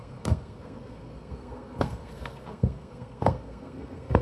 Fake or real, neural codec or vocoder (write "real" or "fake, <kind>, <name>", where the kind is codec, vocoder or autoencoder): fake, codec, SNAC